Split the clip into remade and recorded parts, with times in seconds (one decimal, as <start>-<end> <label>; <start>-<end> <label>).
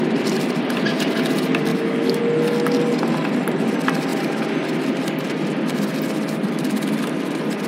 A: 0.0-1.7 recorded; 1.7-2.2 remade; 2.2-7.7 recorded